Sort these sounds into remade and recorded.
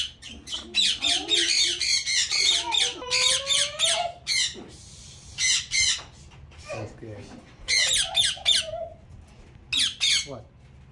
recorded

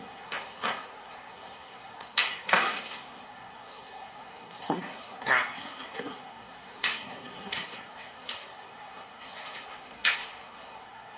remade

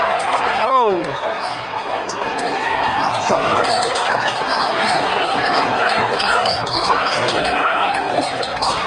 remade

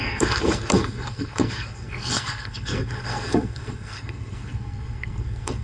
remade